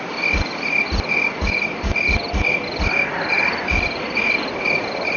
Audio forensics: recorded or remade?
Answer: recorded